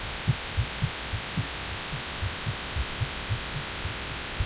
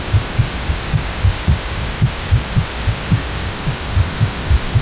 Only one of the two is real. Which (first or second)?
first